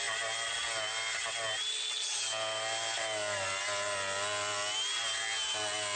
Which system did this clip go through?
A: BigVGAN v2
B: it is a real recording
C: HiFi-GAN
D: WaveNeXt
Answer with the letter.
B